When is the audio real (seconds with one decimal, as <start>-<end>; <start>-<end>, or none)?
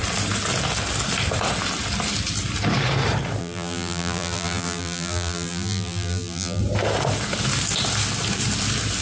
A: 0.0-3.4; 6.6-9.0